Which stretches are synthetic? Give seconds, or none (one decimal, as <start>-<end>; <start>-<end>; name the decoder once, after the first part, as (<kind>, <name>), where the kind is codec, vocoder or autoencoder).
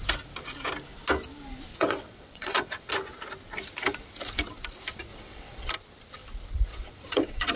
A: 1.7-2.9 (vocoder, WaveNeXt); 5.1-5.7; 6.7-7.6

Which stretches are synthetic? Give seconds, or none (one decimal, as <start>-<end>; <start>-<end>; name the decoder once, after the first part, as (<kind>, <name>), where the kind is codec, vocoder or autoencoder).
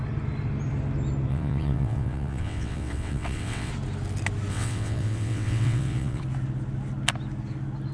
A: 1.3-3.7 (vocoder, WaveNeXt); 4.5-6.2